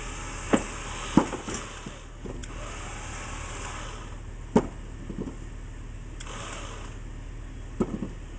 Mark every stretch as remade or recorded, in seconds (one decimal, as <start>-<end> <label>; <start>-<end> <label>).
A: 0.0-8.4 recorded